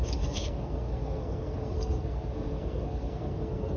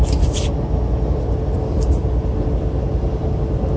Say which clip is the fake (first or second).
first